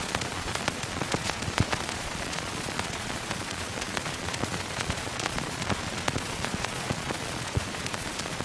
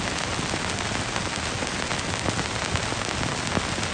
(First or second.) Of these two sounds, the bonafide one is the second